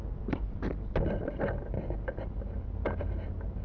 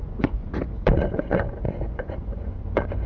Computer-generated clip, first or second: second